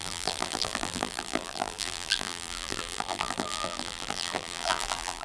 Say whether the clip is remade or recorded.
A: remade